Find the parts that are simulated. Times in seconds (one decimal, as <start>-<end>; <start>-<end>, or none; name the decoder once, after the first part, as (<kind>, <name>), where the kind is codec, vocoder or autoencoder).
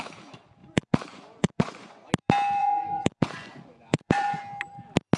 0.6-2.1 (vocoder, Vocos); 2.6-4.4